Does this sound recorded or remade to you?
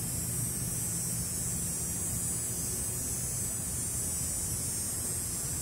recorded